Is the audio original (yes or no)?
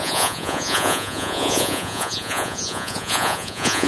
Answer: no